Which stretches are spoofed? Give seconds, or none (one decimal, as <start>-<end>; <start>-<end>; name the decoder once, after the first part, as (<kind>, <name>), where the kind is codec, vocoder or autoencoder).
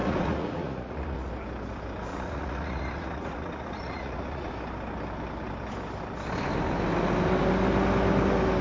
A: 0.0-1.3 (vocoder, Vocos); 2.1-4.5